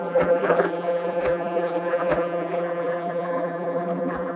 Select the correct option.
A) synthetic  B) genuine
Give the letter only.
A